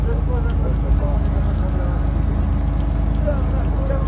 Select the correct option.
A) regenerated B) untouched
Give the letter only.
B